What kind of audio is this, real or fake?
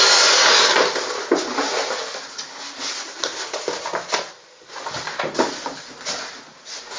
real